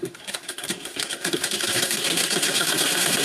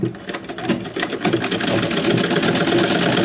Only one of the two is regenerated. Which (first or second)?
first